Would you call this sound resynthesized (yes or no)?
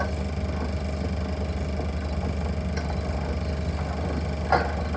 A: no